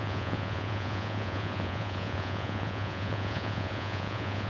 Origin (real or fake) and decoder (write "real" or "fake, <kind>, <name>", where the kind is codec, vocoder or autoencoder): fake, vocoder, Vocos